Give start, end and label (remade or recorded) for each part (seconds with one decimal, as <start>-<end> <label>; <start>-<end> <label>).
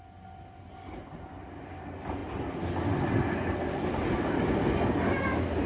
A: 0.0-5.7 recorded